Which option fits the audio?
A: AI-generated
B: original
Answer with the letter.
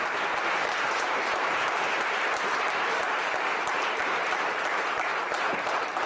A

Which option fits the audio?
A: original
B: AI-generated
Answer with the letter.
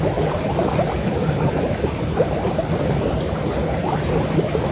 A